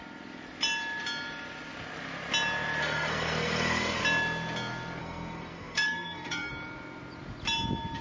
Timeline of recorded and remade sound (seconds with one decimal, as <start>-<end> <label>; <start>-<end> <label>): 0.0-2.8 recorded; 2.8-4.0 remade; 4.0-5.0 recorded; 5.0-6.5 remade; 6.5-8.0 recorded